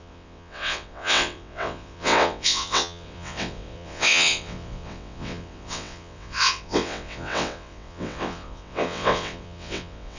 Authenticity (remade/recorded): remade